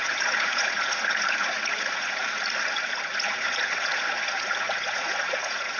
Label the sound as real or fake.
fake